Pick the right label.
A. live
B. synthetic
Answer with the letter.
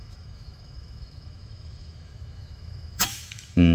B